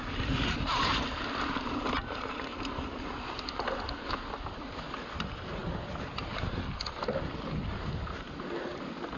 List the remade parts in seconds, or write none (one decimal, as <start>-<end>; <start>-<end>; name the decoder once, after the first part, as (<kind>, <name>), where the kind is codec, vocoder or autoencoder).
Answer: none